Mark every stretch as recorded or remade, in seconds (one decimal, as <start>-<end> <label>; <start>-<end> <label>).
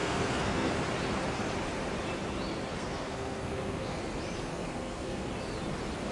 0.0-0.7 remade; 0.7-2.7 recorded; 2.7-4.0 remade; 4.0-4.5 recorded; 4.5-5.3 remade; 5.3-6.1 recorded